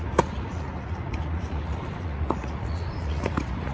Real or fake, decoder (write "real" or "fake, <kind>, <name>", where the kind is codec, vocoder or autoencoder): fake, vocoder, Vocos